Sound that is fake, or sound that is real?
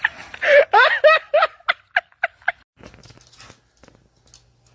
real